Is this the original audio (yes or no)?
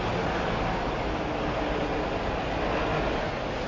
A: yes